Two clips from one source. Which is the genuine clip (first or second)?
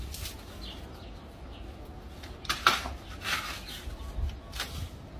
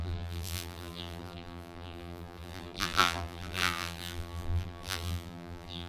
first